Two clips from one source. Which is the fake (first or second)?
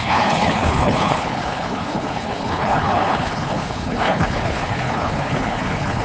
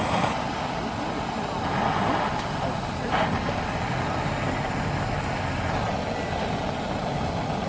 first